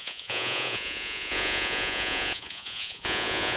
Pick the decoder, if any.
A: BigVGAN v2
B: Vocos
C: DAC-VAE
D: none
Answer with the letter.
B